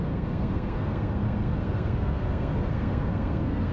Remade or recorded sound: remade